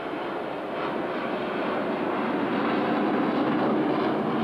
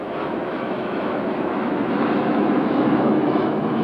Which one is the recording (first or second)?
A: first